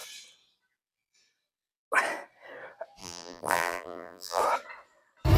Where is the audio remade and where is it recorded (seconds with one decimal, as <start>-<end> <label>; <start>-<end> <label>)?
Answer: 0.0-3.0 recorded; 3.0-4.4 remade; 4.4-5.4 recorded